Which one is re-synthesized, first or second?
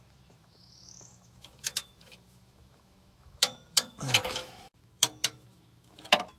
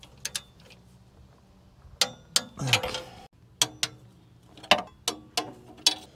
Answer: first